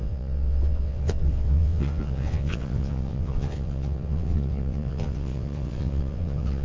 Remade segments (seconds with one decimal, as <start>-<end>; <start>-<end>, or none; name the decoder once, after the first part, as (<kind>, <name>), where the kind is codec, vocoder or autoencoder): 0.0-6.6 (vocoder, WaveNeXt)